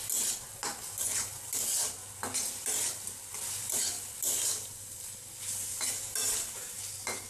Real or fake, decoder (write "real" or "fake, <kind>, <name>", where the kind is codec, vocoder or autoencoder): real